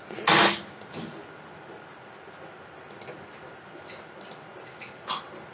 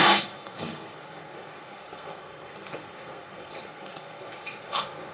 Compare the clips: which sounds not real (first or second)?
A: second